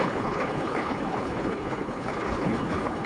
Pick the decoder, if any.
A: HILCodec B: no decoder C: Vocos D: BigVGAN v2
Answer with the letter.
A